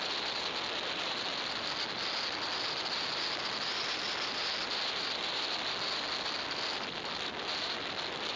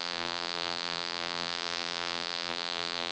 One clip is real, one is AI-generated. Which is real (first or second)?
first